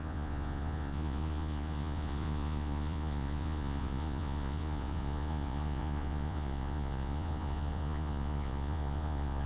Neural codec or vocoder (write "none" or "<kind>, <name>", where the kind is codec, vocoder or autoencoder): vocoder, Vocos